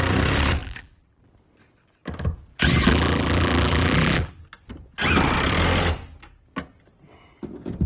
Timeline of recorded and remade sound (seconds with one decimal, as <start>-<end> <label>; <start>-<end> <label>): 0.0-0.6 recorded; 0.6-1.3 remade; 1.3-2.5 recorded; 2.5-4.3 remade; 4.3-7.9 recorded